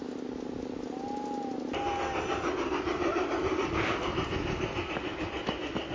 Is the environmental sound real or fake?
real